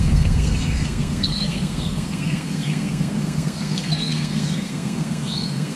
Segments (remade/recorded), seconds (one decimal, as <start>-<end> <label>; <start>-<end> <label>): 0.0-5.8 remade